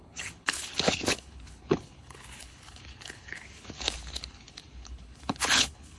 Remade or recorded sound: remade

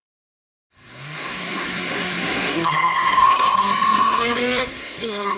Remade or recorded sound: remade